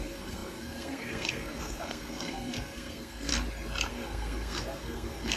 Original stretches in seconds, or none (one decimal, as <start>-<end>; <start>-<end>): 3.3-3.9

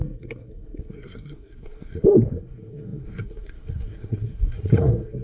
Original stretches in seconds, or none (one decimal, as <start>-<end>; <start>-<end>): none

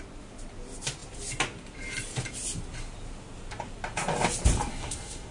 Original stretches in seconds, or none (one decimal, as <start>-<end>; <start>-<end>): 0.0-4.7

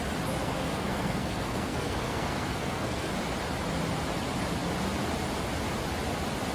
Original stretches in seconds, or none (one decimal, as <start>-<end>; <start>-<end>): 0.0-0.4; 3.1-6.5

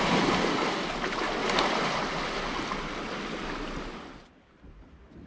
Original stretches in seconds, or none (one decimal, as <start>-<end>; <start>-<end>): 0.0-5.3

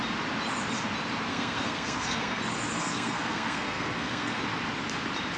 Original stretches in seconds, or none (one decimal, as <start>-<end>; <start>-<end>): 0.0-1.3; 2.4-2.8; 4.4-5.4